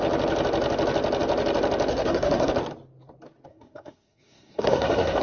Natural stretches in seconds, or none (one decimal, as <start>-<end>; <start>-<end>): 0.0-1.9; 2.5-3.5